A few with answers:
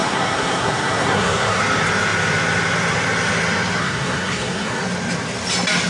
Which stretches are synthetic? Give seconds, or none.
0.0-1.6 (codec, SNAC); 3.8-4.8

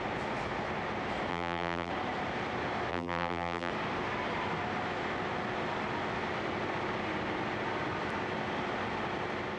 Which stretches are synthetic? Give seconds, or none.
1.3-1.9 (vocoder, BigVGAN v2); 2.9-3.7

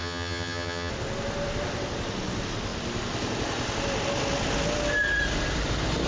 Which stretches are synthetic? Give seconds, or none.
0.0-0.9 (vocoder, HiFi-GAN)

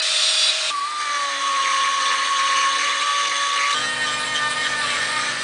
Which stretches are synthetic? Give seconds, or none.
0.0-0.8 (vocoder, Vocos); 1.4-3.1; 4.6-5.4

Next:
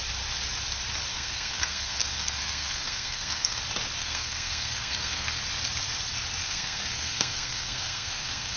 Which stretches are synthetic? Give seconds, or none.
1.1-3.6 (codec, SNAC); 4.0-5.4; 6.4-8.6

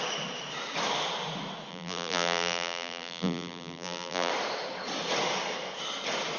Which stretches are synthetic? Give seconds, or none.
1.7-4.3 (vocoder, BigVGAN v2)

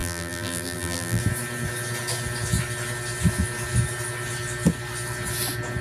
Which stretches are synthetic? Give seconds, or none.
0.0-1.2 (vocoder, BigVGAN v2)